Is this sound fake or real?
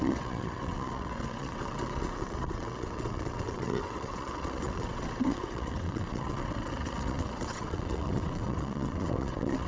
fake